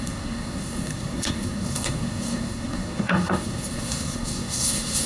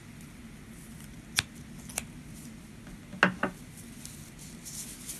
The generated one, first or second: first